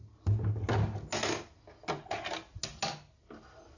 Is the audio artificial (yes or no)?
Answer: no